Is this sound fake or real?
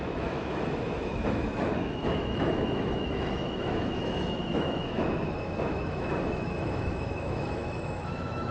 fake